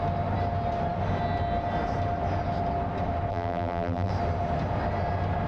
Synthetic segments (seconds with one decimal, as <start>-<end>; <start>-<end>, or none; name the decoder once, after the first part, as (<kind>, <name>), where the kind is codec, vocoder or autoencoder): 3.3-4.1 (vocoder, BigVGAN v2)